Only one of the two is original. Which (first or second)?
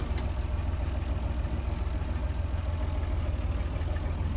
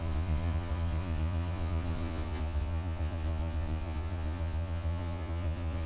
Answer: first